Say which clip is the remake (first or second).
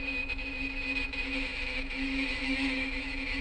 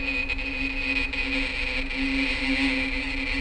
first